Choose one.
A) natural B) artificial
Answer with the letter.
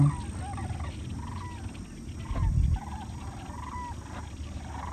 A